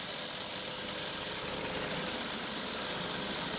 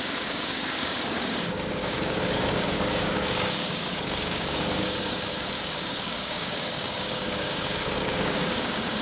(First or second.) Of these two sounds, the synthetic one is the second